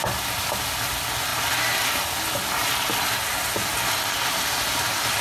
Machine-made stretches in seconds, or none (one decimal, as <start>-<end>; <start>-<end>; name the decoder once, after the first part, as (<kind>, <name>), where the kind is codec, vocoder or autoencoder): none